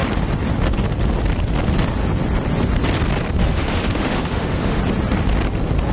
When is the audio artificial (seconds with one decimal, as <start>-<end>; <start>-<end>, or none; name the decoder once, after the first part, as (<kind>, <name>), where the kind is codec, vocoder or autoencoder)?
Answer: 3.4-4.8 (autoencoder, DAC-VAE)